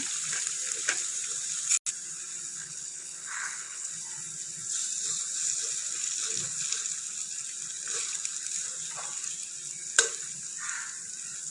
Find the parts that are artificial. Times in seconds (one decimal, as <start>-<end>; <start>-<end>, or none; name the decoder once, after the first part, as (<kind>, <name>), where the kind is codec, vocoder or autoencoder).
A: 2.6-3.9 (codec, HILCodec)